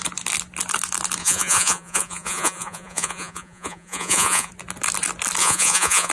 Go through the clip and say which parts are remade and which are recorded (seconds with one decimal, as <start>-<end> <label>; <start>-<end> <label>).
0.0-1.2 recorded; 1.2-4.5 remade; 4.5-5.4 recorded; 5.4-6.1 remade